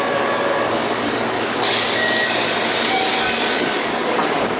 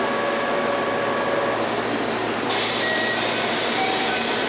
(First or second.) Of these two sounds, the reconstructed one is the first